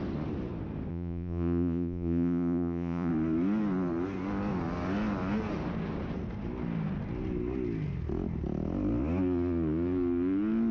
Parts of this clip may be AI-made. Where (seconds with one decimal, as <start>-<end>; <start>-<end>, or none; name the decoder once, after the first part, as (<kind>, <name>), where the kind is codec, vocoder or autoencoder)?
0.9-3.1 (vocoder, Vocos)